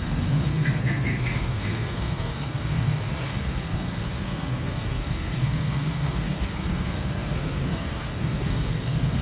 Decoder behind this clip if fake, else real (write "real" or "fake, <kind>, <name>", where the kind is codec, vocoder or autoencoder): fake, codec, SNAC